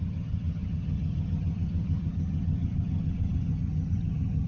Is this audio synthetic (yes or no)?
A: yes